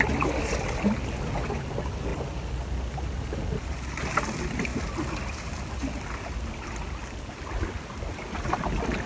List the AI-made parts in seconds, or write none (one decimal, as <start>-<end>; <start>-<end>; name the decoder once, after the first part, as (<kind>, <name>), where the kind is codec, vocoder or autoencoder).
none